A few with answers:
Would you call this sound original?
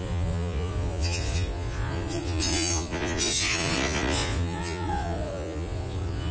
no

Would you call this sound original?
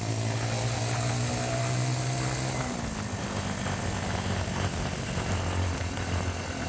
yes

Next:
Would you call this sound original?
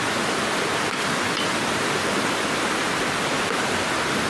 yes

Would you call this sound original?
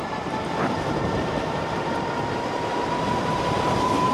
no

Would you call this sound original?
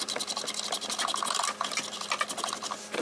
yes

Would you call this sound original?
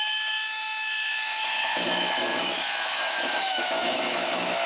no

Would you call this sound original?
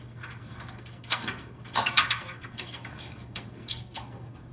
no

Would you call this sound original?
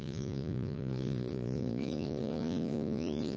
no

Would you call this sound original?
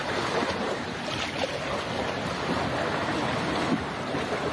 yes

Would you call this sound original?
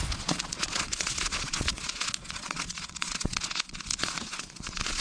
no